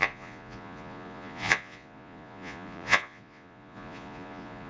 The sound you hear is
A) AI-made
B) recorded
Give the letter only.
A